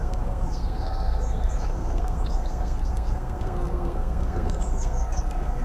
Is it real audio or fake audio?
fake